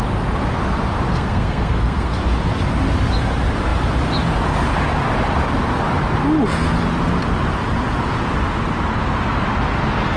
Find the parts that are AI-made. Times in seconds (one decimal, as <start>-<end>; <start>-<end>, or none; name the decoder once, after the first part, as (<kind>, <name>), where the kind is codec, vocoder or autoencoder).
1.1-2.2 (codec, SNAC)